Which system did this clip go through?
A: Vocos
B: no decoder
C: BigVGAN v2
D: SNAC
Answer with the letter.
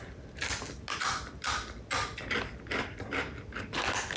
B